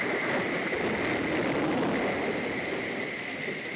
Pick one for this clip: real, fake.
real